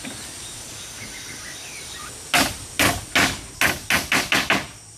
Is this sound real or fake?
real